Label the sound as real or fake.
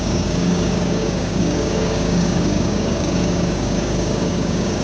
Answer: fake